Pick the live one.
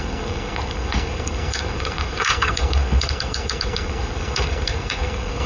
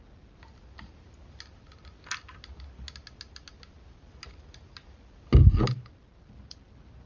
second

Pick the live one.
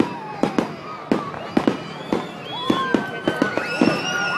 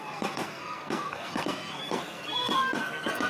first